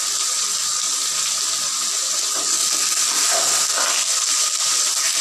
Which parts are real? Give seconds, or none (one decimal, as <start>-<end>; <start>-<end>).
0.0-2.6; 3.6-4.1